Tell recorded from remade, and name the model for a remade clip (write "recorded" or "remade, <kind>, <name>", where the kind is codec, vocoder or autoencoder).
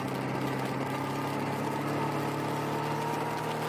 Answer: recorded